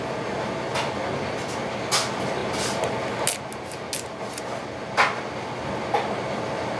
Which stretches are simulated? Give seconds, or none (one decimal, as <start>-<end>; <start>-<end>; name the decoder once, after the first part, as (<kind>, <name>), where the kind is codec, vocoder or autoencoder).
none